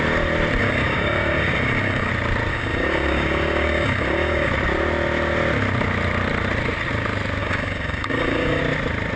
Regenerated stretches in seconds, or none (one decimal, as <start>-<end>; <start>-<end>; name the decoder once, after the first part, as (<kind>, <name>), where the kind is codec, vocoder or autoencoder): 0.6-2.1 (codec, DAC); 2.5-4.5; 7.4-8.6